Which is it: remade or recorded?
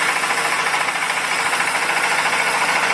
remade